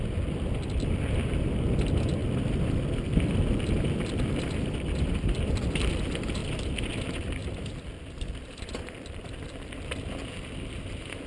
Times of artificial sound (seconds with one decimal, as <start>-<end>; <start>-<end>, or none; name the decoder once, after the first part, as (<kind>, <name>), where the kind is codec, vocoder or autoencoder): 2.2-5.9 (vocoder, BigVGAN v2); 6.4-6.9; 7.4-10.1